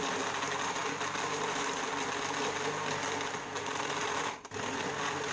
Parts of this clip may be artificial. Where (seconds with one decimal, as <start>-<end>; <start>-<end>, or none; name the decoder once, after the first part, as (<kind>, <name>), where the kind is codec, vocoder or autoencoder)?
none